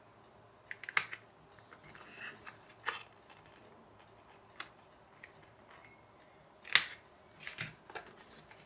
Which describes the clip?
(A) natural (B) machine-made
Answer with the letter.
A